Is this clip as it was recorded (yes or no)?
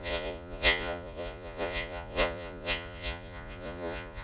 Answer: no